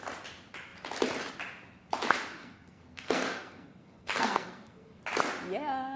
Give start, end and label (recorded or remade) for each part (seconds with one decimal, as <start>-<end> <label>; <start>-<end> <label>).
0.0-2.4 recorded; 2.4-5.0 remade; 5.0-6.0 recorded